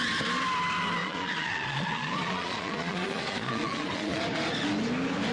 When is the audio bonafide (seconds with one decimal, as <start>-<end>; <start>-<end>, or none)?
0.0-1.0; 4.2-5.3